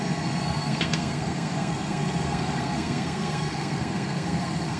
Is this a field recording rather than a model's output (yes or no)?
no